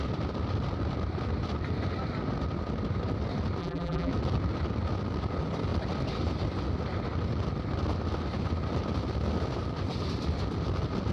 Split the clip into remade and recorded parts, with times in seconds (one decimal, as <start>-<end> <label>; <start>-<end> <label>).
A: 0.0-3.6 recorded; 3.6-4.1 remade; 4.1-11.1 recorded